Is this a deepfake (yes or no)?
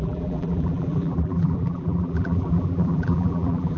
yes